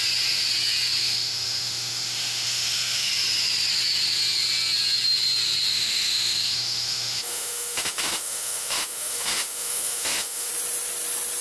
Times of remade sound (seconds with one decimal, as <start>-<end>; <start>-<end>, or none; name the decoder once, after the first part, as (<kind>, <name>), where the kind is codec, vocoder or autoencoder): 1.0-3.1 (autoencoder, DAC-VAE); 5.7-10.5